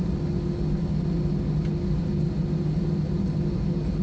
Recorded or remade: recorded